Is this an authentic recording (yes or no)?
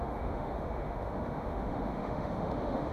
no